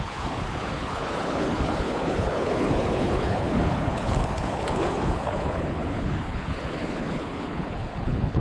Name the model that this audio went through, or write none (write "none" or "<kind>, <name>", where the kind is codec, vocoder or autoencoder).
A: codec, HILCodec